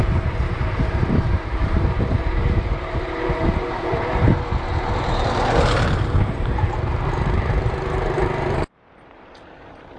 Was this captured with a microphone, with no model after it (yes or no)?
no